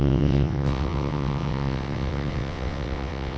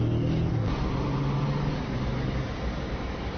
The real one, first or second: second